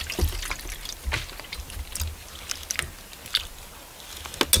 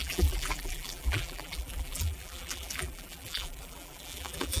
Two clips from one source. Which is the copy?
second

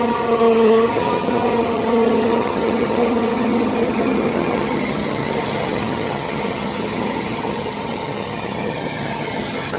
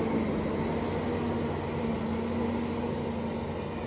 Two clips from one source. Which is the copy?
first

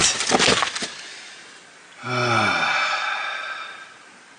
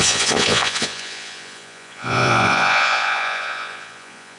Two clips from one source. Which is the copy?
second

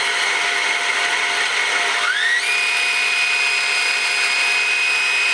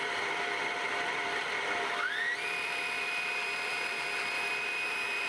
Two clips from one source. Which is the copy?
second